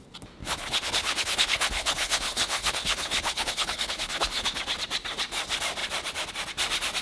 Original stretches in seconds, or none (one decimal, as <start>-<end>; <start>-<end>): 0.0-0.4; 4.6-7.0